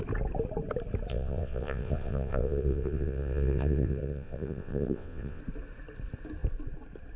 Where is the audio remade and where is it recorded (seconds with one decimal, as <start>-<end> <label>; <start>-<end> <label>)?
0.0-1.1 recorded; 1.1-5.4 remade; 5.4-7.2 recorded